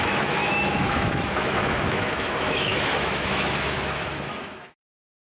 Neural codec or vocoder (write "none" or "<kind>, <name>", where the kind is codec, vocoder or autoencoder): autoencoder, DAC-VAE